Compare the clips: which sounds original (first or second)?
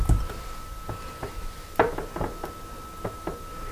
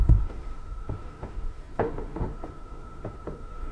first